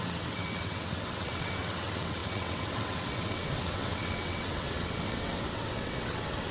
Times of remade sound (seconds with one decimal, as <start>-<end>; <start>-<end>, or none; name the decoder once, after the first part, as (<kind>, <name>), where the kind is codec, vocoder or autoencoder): 0.0-6.5 (vocoder, WaveNeXt)